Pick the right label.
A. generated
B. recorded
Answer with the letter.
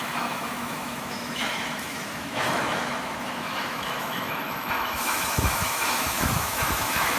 A